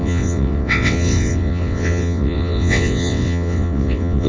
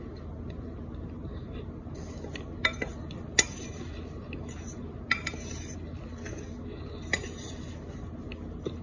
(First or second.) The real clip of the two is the second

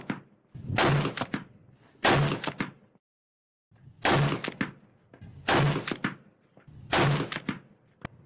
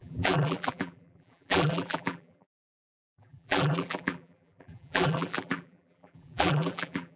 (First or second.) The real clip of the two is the first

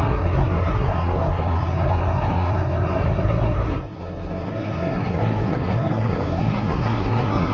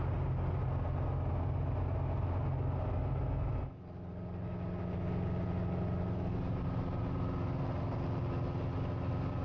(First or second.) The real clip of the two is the second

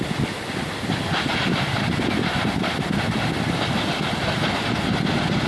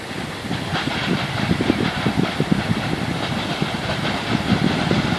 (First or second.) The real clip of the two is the first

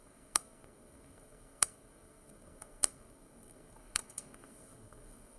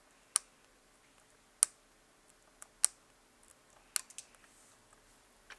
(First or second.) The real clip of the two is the second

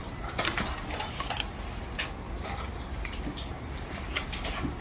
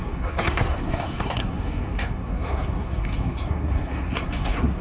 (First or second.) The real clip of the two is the first